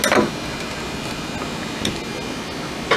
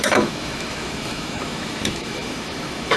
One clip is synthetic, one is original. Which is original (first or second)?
first